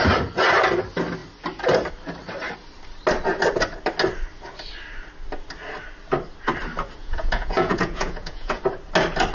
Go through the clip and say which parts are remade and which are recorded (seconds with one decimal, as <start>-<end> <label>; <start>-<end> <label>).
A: 0.0-7.0 recorded; 7.0-8.6 remade; 8.6-9.3 recorded